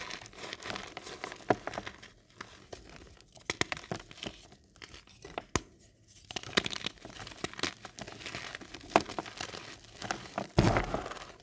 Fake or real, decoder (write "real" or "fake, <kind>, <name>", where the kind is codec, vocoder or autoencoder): real